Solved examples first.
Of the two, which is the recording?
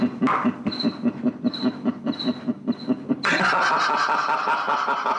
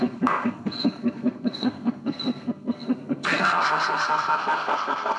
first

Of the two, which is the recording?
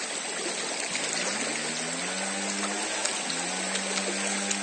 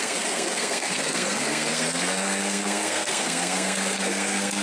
first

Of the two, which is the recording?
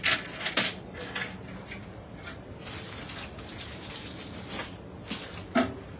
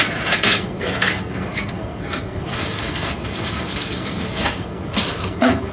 first